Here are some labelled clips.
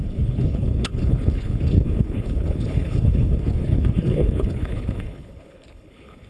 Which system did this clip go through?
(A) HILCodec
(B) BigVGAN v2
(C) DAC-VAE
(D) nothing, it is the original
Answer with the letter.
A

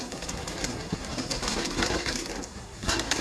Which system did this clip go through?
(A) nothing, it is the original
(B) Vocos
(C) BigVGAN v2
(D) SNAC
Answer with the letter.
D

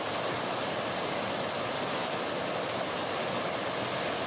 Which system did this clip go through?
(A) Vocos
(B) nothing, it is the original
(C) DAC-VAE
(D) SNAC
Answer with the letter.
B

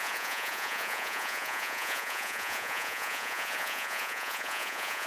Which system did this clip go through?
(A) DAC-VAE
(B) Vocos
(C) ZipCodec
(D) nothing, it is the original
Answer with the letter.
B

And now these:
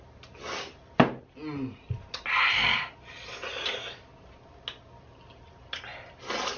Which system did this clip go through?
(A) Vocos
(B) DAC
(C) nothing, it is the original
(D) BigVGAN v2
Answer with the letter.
C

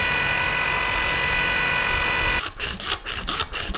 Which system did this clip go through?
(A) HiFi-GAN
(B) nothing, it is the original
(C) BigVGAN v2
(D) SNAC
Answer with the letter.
B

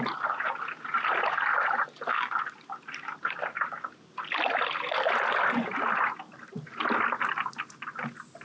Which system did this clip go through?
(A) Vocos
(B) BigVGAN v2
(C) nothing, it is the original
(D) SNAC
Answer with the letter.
C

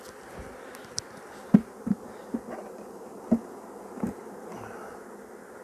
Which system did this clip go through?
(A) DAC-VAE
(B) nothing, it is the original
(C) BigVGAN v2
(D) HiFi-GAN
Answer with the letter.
B